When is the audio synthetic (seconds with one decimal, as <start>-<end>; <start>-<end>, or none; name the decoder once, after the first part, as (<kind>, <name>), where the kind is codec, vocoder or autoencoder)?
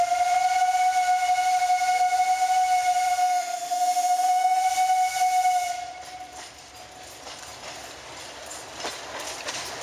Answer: 3.2-4.6 (autoencoder, DAC-VAE)